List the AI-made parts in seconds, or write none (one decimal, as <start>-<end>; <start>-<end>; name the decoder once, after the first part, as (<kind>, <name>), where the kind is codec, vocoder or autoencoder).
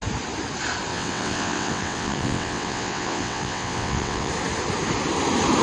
0.9-4.3 (vocoder, WaveNeXt)